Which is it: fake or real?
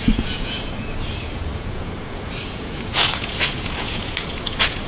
fake